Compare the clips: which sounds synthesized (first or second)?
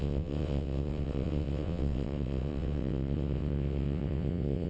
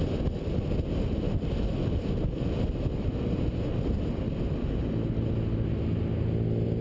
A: first